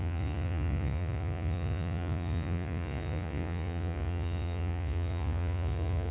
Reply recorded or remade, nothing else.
remade